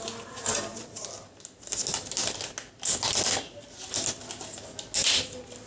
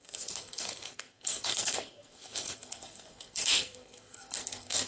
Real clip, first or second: first